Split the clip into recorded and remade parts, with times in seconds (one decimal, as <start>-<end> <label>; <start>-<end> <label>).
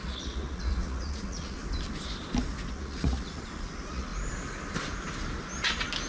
0.0-1.6 remade; 1.6-2.7 recorded; 2.7-4.1 remade; 4.1-6.1 recorded